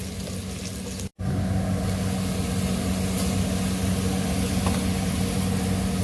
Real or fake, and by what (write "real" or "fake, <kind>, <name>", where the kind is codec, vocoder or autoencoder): real